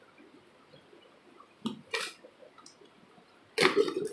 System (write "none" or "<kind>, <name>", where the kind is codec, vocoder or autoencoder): none